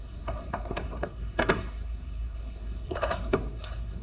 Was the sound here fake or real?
fake